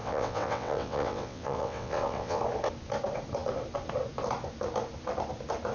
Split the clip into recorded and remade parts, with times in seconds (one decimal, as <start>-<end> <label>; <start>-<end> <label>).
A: 0.0-2.4 remade; 2.4-5.7 recorded